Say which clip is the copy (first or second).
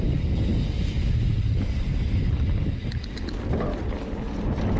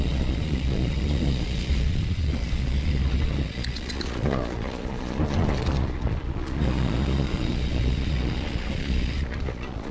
second